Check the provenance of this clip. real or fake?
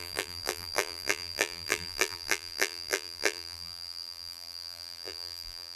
fake